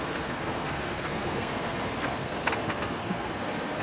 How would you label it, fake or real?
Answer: fake